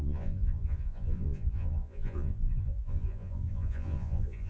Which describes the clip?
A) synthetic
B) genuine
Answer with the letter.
A